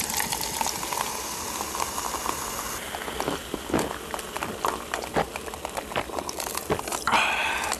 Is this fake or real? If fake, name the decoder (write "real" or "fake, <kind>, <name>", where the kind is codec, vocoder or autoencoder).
real